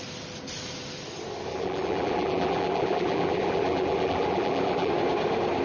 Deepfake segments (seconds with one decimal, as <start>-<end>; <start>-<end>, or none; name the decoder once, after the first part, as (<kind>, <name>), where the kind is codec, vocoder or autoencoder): 1.5-4.9 (vocoder, BigVGAN v2)